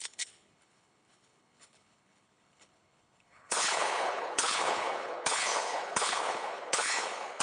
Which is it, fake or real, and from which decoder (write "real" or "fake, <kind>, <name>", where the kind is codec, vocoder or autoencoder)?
fake, codec, HILCodec